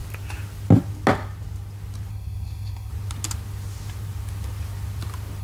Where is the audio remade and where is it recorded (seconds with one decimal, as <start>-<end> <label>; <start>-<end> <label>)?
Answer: 0.0-2.1 recorded; 2.1-2.9 remade; 2.9-5.4 recorded